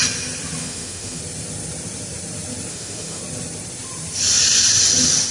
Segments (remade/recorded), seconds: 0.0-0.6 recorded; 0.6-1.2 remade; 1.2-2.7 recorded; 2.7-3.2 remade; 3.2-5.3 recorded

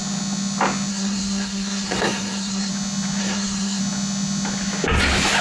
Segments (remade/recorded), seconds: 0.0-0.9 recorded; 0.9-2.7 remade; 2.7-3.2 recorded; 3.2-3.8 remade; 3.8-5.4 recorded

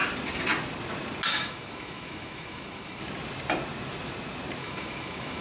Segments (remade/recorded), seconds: 0.0-1.3 recorded; 1.3-3.0 remade; 3.0-4.6 recorded; 4.6-5.4 remade

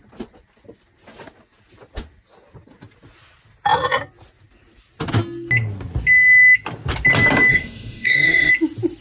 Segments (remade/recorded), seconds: 0.0-7.5 recorded; 7.5-8.5 remade; 8.5-9.0 recorded